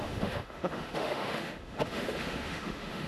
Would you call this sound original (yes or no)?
no